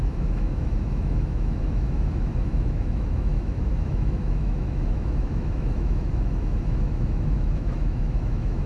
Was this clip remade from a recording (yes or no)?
yes